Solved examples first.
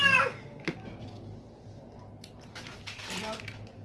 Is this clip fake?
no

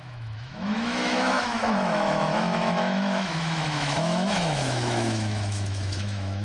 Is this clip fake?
yes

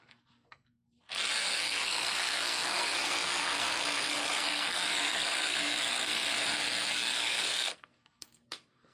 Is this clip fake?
yes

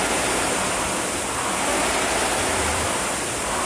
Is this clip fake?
yes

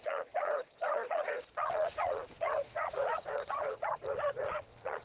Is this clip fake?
yes